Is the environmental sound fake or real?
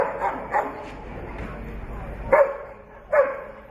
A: real